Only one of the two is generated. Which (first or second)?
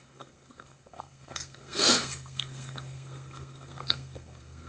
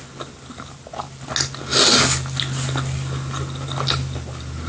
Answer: first